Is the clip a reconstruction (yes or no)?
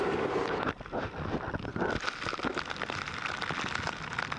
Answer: no